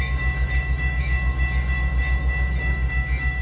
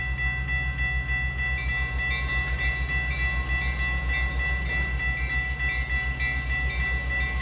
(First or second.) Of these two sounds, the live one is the second